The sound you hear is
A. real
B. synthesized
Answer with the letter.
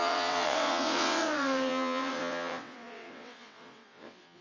B